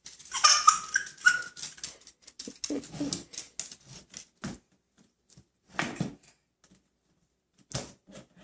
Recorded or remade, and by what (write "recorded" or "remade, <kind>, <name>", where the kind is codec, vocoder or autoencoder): recorded